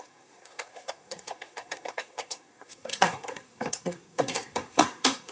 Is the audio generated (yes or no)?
yes